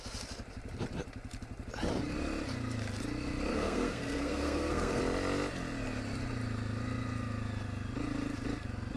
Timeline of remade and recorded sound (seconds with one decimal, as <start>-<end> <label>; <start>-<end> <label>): 0.0-3.5 recorded; 3.5-5.0 remade; 5.0-9.0 recorded